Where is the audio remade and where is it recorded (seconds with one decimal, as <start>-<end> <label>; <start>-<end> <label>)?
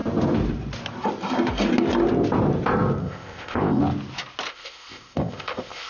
0.0-3.0 recorded; 3.0-3.8 remade; 3.8-4.5 recorded; 4.5-5.9 remade